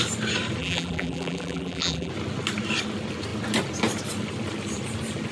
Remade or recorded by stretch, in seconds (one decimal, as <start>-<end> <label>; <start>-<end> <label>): 0.0-0.6 recorded; 0.6-2.1 remade; 2.1-5.3 recorded